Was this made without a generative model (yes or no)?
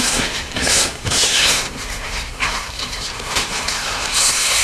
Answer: no